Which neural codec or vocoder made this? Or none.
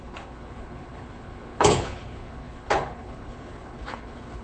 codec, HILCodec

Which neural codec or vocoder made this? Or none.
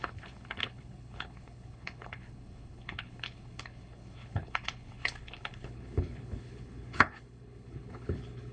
codec, HILCodec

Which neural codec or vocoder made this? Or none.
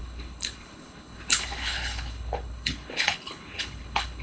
codec, HILCodec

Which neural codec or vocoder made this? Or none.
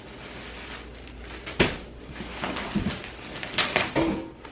none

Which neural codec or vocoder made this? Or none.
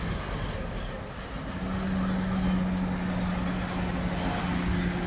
none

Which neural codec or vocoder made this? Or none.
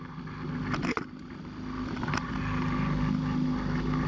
none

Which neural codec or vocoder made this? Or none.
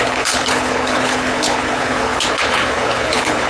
codec, HILCodec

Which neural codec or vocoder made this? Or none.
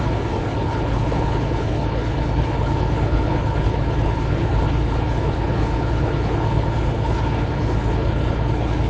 codec, HILCodec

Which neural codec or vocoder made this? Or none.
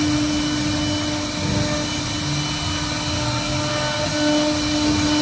none